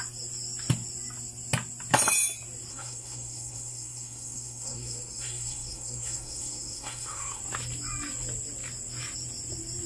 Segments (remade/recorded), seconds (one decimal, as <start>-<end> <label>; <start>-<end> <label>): 0.0-2.7 recorded; 2.7-7.4 remade; 7.4-9.9 recorded